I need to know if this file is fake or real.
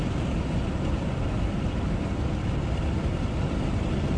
real